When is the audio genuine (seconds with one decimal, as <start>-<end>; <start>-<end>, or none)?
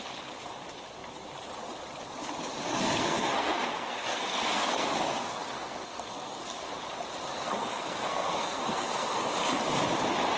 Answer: 0.0-2.7; 6.7-7.3; 9.3-10.4